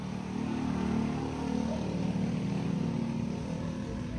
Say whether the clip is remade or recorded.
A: recorded